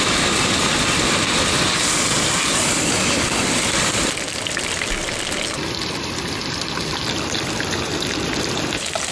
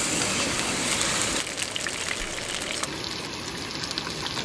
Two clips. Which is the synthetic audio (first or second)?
first